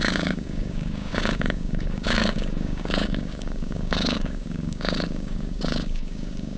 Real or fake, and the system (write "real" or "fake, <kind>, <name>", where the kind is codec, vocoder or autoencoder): fake, codec, DAC